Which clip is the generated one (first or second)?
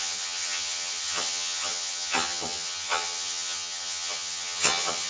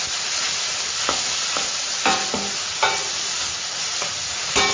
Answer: first